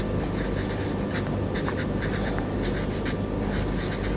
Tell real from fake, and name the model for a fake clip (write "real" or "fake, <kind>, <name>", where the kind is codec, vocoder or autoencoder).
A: real